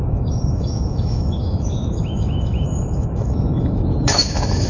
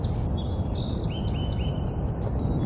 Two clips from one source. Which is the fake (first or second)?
first